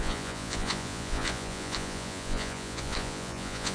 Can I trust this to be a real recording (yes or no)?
no